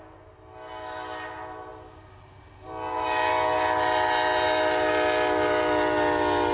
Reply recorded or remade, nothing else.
recorded